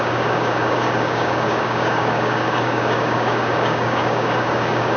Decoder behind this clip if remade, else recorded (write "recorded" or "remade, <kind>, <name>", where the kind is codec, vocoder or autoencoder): remade, codec, DAC